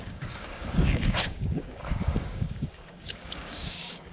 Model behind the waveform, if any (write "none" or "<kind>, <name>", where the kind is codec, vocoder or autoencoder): codec, DAC